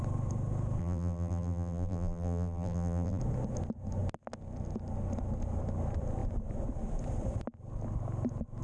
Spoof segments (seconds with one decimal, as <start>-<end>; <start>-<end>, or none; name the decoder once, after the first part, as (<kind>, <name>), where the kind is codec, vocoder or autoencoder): 0.8-3.2 (vocoder, BigVGAN v2)